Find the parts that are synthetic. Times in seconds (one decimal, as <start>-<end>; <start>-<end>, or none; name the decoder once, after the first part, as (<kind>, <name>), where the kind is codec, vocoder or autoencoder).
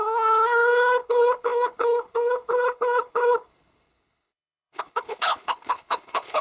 0.0-6.4 (codec, HILCodec)